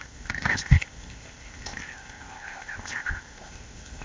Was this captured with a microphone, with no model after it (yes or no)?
no